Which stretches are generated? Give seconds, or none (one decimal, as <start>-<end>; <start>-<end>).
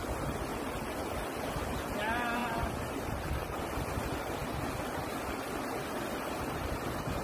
0.5-1.1; 2.4-3.6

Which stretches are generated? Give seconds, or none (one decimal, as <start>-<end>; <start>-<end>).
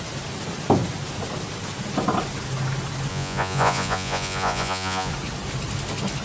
3.1-5.1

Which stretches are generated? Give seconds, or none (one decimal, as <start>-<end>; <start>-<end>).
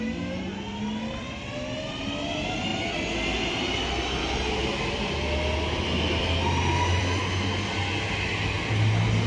none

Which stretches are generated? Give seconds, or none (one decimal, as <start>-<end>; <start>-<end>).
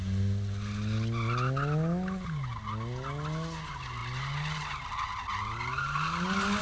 none